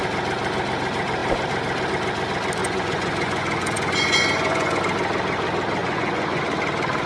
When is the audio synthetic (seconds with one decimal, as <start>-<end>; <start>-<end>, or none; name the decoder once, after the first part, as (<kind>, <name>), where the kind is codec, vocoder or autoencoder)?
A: 2.6-4.8 (vocoder, Vocos); 5.8-6.4